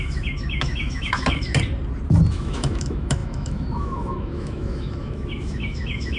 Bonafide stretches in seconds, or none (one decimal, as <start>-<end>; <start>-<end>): 1.5-2.3